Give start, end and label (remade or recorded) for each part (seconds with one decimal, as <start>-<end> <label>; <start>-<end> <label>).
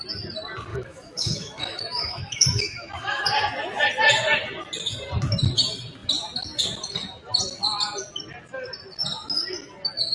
0.0-0.7 recorded; 0.7-3.2 remade; 3.2-10.1 recorded